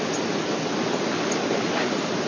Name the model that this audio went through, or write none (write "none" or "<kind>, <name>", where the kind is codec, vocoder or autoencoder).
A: none